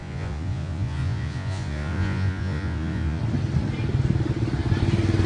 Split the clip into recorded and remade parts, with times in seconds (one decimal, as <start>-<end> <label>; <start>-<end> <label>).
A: 0.0-3.2 remade; 3.2-5.3 recorded